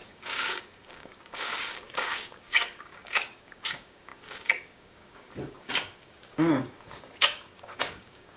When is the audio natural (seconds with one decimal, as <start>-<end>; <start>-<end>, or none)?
none